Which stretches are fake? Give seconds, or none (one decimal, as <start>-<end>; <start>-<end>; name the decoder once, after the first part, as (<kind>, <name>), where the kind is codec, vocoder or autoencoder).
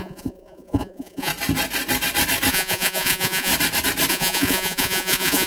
0.0-1.3 (vocoder, Vocos); 2.5-3.5; 4.1-5.5